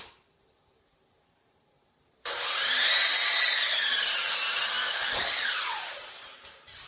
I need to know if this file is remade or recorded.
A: remade